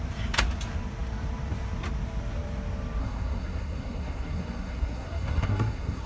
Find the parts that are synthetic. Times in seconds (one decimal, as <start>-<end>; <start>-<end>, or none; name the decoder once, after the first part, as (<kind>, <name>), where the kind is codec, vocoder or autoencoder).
3.0-6.1 (codec, SNAC)